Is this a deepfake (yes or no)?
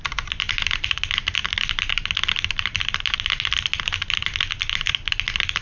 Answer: no